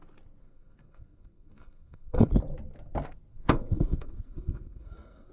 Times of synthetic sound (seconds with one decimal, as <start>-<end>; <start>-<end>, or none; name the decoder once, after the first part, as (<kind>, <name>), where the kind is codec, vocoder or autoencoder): 0.4-2.3 (codec, SNAC); 3.3-5.3